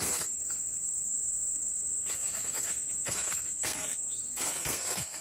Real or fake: fake